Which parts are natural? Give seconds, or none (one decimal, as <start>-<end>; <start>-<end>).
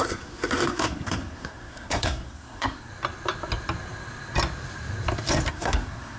2.9-5.5